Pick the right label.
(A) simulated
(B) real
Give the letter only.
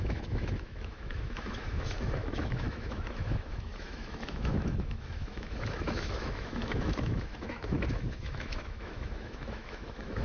A